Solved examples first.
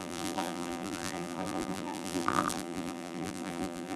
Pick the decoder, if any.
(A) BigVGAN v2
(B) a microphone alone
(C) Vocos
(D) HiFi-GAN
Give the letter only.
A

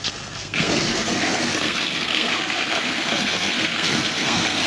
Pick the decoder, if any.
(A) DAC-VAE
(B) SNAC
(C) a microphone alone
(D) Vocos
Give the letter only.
B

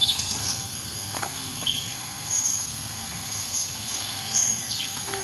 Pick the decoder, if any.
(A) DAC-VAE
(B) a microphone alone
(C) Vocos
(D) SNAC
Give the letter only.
D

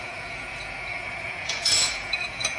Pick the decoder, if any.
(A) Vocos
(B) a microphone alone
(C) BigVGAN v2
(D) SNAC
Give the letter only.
A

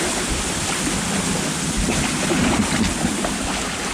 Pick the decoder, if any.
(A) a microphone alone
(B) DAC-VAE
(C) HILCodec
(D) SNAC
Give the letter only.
A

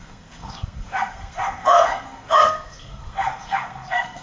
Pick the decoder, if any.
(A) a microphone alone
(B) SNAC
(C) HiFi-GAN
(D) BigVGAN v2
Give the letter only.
B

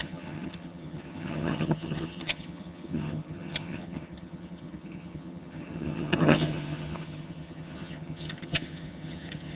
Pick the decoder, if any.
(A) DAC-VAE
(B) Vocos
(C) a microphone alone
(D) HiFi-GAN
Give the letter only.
D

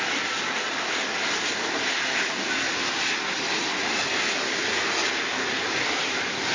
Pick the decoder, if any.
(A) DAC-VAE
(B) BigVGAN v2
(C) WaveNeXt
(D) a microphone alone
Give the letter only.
D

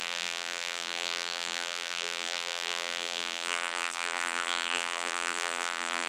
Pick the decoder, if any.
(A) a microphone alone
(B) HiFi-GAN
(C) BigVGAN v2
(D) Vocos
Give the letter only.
C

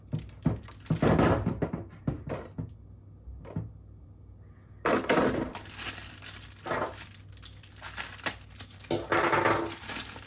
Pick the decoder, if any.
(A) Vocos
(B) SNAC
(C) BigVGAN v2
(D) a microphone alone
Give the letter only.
D